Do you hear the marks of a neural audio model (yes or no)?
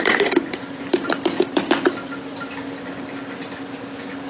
no